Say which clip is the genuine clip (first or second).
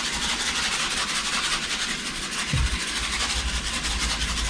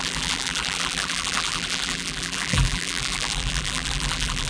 first